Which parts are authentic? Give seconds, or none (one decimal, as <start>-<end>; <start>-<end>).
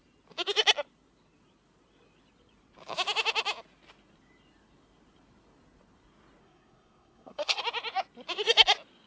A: 0.0-6.4; 7.6-9.1